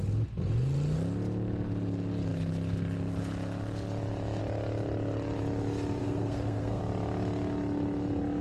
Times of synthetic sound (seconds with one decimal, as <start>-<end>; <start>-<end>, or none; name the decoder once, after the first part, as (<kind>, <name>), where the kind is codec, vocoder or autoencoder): 6.0-6.8 (codec, SNAC)